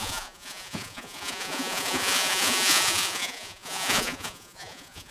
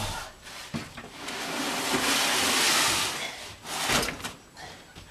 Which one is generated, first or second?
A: first